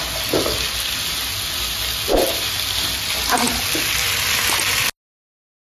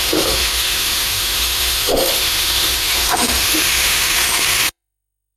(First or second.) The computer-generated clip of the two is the second